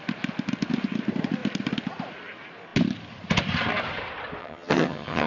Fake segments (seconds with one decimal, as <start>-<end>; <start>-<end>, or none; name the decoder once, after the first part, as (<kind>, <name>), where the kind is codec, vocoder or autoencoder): 4.4-5.3 (vocoder, HiFi-GAN)